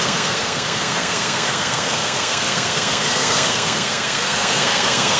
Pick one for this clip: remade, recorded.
remade